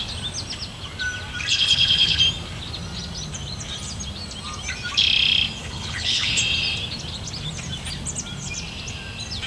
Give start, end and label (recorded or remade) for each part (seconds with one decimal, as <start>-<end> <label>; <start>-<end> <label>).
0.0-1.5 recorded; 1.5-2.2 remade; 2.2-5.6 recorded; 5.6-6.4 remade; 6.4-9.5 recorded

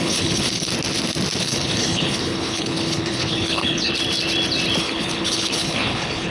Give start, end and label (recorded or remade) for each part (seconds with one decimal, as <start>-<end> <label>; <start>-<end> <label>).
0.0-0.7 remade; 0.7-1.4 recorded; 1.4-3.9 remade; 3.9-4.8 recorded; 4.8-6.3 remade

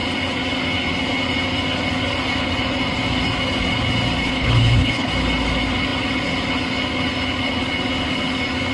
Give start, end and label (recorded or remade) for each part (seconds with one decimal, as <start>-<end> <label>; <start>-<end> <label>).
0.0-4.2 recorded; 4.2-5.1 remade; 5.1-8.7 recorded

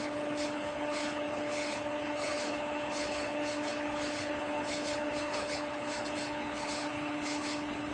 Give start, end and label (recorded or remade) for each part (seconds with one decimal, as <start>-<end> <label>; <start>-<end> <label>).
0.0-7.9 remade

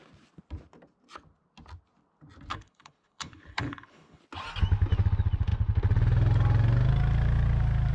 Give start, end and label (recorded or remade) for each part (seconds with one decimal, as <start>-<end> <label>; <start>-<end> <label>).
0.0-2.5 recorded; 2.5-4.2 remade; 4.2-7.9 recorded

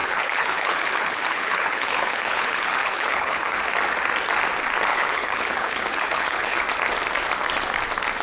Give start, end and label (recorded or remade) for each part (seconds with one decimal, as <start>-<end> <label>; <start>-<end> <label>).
0.0-3.6 remade; 3.6-4.9 recorded; 4.9-6.6 remade; 6.6-8.2 recorded

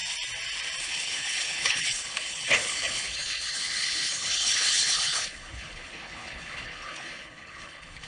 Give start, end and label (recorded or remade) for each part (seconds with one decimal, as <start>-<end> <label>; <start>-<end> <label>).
0.0-0.8 recorded; 0.8-8.1 remade